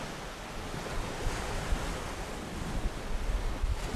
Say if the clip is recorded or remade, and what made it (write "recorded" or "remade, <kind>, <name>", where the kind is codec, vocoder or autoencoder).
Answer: recorded